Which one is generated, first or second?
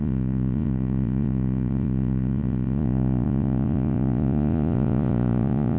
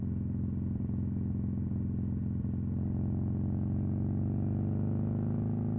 first